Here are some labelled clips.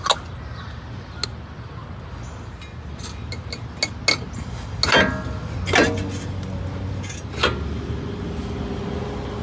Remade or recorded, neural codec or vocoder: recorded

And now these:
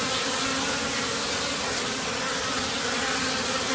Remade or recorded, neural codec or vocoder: recorded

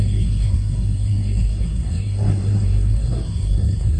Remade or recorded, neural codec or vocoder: remade, codec, SNAC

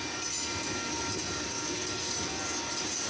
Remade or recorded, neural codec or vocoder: recorded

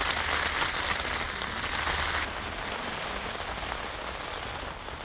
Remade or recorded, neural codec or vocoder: recorded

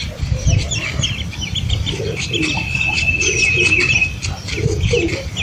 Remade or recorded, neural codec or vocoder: recorded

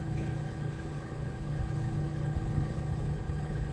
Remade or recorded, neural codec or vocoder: remade, codec, HILCodec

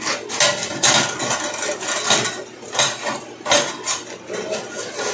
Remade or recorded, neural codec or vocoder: recorded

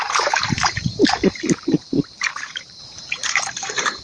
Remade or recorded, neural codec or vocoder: remade, vocoder, BigVGAN v2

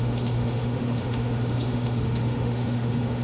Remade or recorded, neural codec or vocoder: remade, autoencoder, DAC-VAE